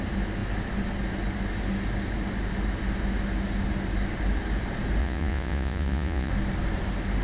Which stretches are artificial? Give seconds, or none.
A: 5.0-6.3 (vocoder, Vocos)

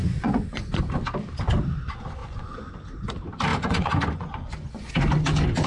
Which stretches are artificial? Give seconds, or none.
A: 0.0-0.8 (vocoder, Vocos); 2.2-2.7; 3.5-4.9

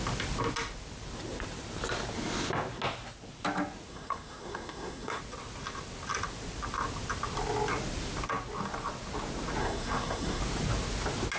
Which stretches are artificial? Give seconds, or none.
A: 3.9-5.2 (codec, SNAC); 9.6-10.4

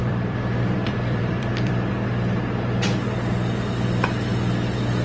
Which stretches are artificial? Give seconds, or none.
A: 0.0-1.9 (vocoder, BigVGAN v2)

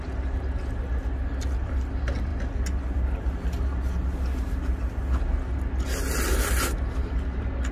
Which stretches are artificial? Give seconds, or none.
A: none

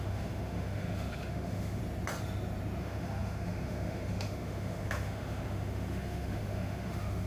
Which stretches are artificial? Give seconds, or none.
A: 0.0-1.8 (autoencoder, DAC-VAE); 2.8-7.3